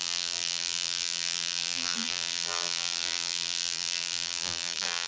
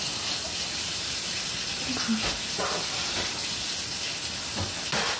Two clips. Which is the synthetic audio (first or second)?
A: first